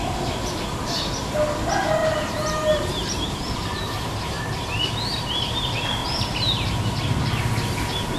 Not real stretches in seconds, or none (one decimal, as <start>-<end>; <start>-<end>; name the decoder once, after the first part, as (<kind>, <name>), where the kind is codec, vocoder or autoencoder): 2.0-4.9 (vocoder, BigVGAN v2); 6.0-7.2